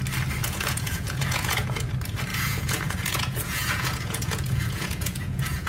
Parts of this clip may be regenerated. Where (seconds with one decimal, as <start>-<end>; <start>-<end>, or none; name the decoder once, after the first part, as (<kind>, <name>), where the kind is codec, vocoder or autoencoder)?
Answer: 0.4-1.9 (vocoder, Vocos); 2.3-5.7